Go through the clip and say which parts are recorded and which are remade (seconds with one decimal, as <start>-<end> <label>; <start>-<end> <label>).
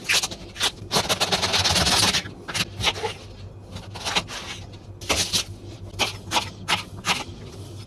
0.0-7.9 recorded